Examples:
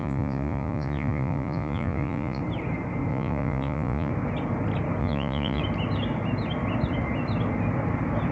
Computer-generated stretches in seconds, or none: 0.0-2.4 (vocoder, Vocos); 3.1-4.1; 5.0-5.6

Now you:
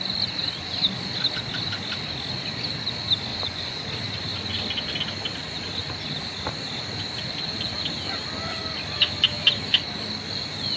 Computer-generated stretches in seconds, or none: 3.3-3.8 (vocoder, Vocos)

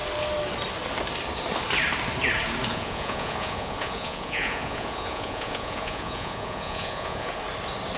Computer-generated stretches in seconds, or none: 2.7-7.4 (vocoder, Vocos)